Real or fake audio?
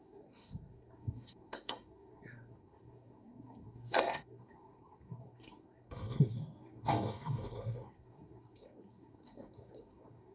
fake